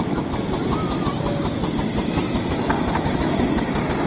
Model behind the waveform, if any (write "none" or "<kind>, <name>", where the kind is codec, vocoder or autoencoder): none